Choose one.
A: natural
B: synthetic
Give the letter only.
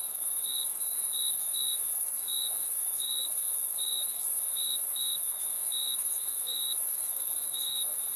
B